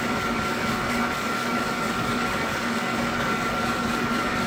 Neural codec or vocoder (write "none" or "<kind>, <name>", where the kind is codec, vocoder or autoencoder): codec, DAC